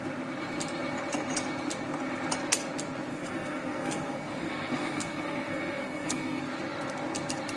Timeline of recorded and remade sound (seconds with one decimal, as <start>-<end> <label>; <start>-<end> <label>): 0.0-3.1 recorded; 3.1-6.4 remade; 6.4-7.6 recorded